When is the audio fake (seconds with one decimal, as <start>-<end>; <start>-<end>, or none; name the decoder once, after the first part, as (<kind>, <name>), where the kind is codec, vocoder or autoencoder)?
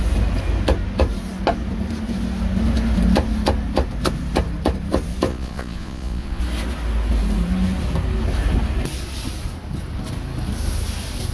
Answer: 5.3-6.4 (vocoder, Vocos)